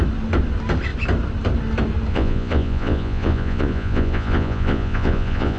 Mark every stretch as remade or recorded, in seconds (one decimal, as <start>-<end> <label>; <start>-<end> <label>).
0.0-2.1 recorded; 2.1-5.6 remade